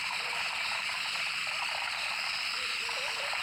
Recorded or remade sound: recorded